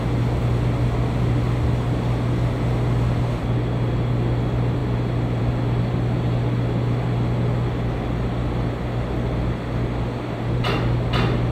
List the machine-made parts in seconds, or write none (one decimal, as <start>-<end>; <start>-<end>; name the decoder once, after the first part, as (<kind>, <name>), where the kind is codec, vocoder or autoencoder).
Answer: none